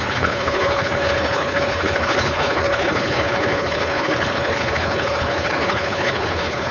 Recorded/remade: remade